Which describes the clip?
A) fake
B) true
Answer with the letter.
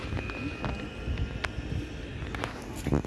B